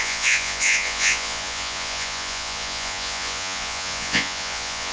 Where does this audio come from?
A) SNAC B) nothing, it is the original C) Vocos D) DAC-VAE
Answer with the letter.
C